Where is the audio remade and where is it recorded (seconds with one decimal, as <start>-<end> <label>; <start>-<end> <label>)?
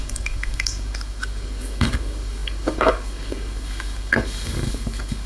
0.0-5.3 remade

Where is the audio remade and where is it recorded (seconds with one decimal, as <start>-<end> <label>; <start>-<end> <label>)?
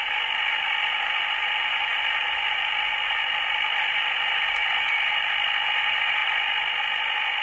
0.0-7.4 recorded